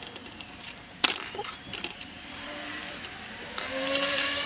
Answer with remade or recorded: remade